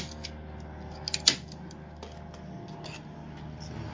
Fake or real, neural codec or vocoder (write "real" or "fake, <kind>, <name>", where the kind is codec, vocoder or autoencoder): real